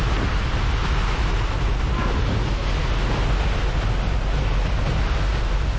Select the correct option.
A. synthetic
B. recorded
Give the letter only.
B